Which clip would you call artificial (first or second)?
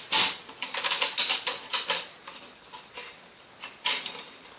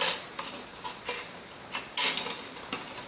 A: first